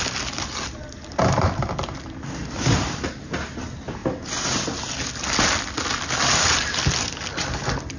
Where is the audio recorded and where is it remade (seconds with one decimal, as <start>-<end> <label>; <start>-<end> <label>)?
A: 0.0-8.0 recorded